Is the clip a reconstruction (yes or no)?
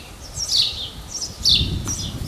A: yes